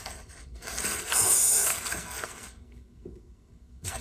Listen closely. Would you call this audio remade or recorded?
remade